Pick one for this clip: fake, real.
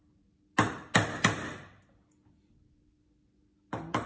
real